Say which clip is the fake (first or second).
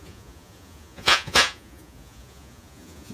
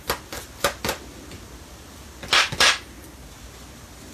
first